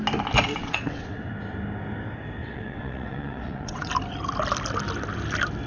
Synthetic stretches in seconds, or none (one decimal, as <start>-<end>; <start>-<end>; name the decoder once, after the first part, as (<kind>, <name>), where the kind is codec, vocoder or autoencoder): 0.6-1.3 (vocoder, WaveNeXt); 2.4-3.9